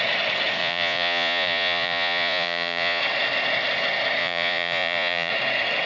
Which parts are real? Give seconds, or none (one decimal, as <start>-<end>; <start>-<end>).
0.0-0.6; 3.0-4.2; 5.3-5.9